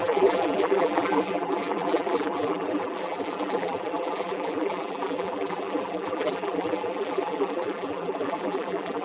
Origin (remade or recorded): remade